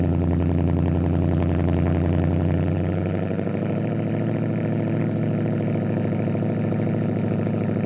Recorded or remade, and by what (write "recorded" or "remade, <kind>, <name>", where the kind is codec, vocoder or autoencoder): remade, vocoder, BigVGAN v2